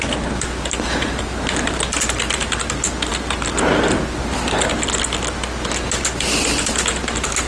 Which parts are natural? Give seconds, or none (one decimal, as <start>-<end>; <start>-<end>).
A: 0.0-7.5